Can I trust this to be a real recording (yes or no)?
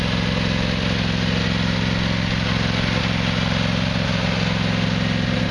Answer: yes